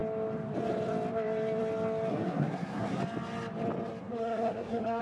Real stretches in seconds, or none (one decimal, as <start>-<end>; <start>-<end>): 0.0-2.1; 3.0-4.0